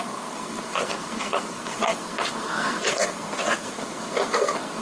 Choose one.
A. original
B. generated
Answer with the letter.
B